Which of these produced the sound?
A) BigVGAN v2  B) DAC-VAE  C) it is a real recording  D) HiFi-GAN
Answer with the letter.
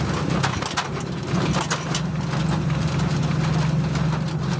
C